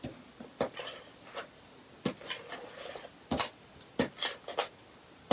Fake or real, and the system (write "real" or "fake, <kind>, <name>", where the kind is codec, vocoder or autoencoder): real